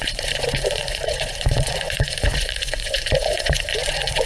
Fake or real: fake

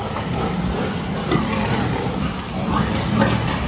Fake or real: real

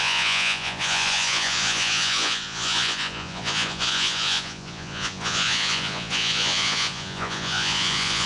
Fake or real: fake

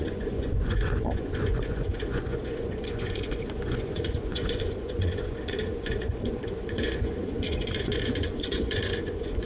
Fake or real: fake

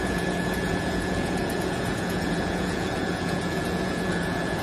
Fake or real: fake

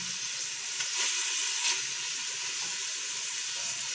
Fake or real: real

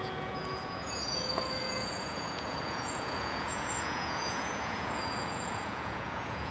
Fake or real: fake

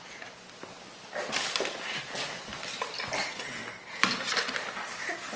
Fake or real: real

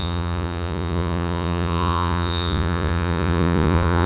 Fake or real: fake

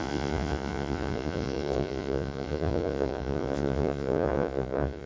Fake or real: fake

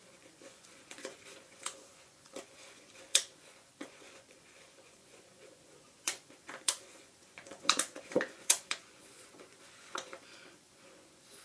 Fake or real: fake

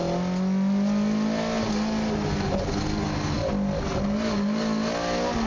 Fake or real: real